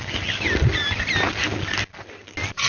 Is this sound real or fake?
real